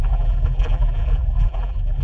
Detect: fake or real fake